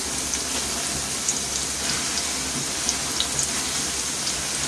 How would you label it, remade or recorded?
recorded